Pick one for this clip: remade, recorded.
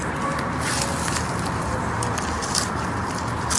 recorded